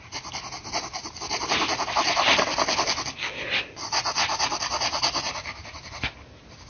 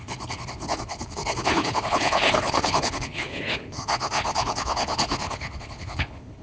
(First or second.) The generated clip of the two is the second